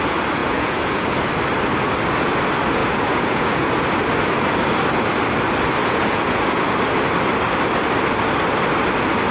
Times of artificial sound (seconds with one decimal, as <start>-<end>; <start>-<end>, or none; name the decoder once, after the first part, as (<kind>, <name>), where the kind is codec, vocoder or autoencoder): 0.4-1.2 (vocoder, Vocos); 2.8-3.7; 5.8-6.7